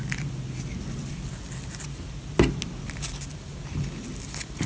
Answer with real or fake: real